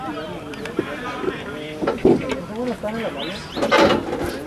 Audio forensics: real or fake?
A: real